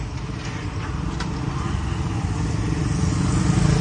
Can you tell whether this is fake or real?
real